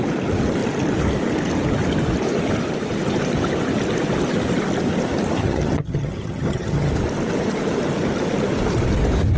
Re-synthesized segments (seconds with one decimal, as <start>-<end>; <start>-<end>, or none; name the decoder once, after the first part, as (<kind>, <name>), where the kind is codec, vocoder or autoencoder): 5.4-6.9 (vocoder, HiFi-GAN)